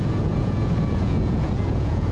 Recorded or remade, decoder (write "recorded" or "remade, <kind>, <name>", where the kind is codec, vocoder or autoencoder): remade, vocoder, Vocos